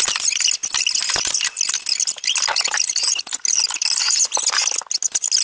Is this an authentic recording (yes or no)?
yes